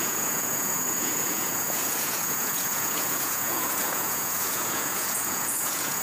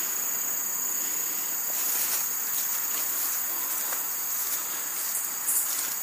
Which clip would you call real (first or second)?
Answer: second